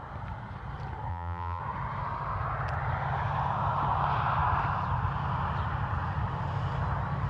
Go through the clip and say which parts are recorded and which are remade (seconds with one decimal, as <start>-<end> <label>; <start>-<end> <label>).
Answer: 0.0-1.1 recorded; 1.1-1.6 remade; 1.6-7.3 recorded